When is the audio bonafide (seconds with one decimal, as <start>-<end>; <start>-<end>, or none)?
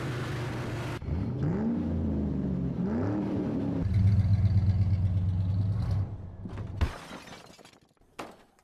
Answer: 0.0-8.6